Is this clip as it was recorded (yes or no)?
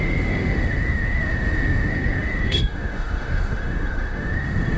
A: no